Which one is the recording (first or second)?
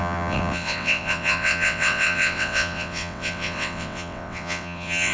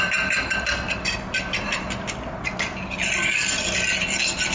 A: second